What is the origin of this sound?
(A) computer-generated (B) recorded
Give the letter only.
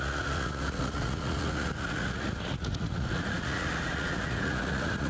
A